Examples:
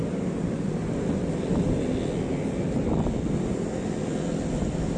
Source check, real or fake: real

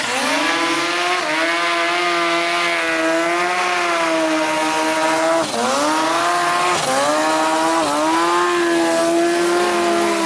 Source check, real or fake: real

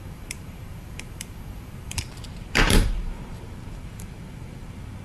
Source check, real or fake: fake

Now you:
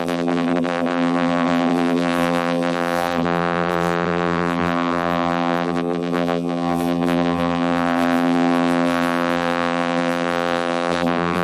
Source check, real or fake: fake